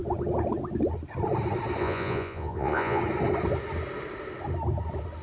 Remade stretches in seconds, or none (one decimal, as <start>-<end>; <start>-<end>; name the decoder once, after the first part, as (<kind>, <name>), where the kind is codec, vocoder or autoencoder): 1.8-3.0 (vocoder, Vocos)